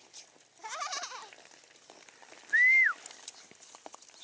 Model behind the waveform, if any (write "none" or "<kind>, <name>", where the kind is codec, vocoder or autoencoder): none